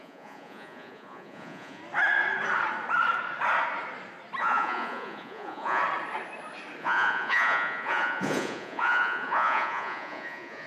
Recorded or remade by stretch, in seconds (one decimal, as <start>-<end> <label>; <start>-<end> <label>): 0.0-1.8 remade; 1.8-4.4 recorded; 4.4-5.8 remade; 5.8-6.8 recorded; 6.8-10.7 remade